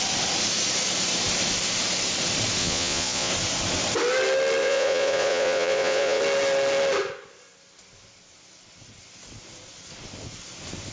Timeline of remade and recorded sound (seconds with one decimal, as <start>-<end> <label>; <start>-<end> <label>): 0.0-2.6 recorded; 2.6-3.3 remade; 3.3-4.6 recorded; 4.6-6.2 remade; 6.2-10.9 recorded